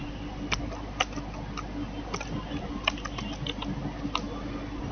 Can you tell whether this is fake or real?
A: real